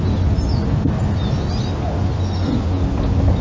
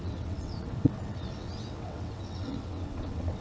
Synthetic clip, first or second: second